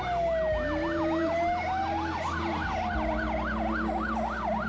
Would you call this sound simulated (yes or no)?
no